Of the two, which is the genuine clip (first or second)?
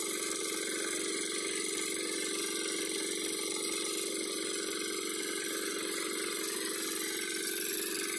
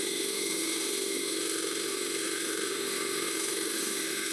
first